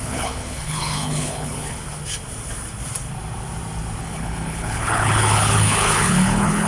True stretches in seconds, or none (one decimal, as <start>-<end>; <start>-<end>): 1.8-4.0